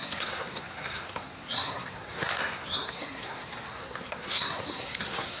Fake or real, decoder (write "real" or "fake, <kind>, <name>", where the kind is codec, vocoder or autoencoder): fake, codec, SNAC